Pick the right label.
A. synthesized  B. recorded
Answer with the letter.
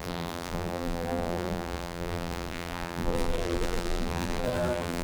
A